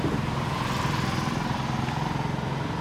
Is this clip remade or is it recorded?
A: recorded